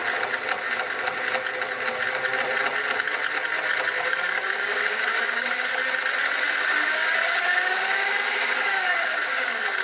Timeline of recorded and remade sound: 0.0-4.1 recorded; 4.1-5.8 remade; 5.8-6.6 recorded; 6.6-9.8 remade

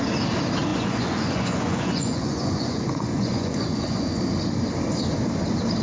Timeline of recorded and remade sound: 0.0-0.7 recorded; 0.7-4.2 remade; 4.2-5.8 recorded

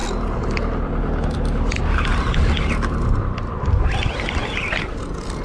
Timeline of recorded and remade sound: 0.0-5.4 recorded